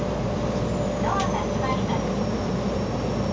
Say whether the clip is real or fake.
real